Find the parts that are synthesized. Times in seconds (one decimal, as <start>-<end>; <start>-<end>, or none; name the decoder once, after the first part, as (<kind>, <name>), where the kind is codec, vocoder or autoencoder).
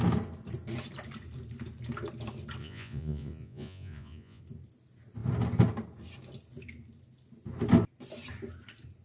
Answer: 2.6-4.4 (vocoder, Vocos)